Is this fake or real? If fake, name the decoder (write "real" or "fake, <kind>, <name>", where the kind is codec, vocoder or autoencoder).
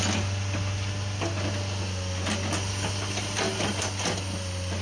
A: real